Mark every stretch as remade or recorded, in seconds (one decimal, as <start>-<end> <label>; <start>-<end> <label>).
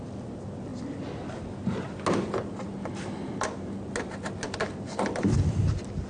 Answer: 0.0-6.1 recorded